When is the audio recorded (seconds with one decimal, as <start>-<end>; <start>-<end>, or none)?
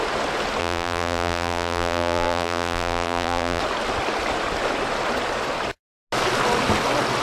0.0-0.6; 3.6-7.2